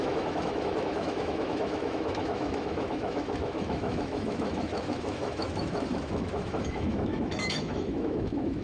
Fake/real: fake